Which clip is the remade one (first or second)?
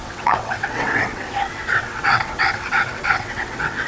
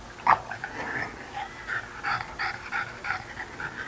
first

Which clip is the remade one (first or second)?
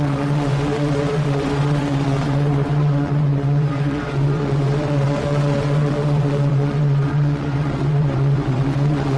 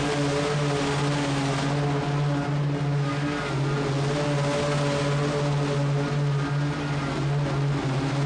first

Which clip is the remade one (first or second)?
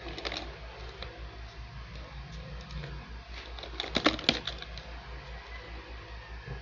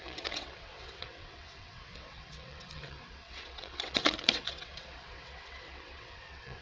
second